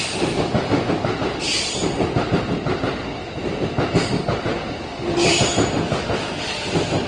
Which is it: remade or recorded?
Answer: recorded